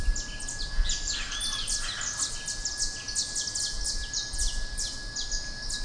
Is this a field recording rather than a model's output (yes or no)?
yes